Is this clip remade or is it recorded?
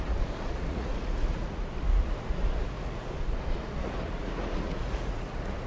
remade